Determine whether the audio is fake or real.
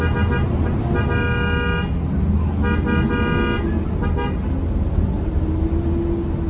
real